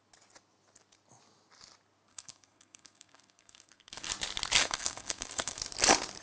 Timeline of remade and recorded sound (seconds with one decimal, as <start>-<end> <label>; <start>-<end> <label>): 0.0-2.1 recorded; 2.1-4.1 remade; 4.1-4.6 recorded; 4.6-5.6 remade; 5.6-6.2 recorded